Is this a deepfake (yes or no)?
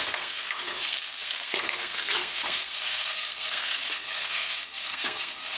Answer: yes